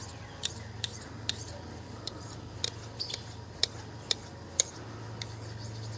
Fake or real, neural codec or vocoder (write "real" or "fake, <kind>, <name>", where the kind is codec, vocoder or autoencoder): real